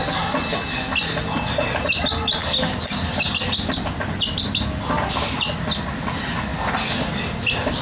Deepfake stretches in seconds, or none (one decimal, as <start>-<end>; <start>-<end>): none